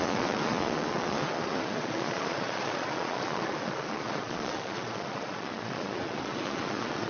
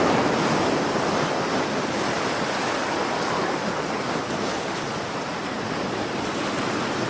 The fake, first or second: first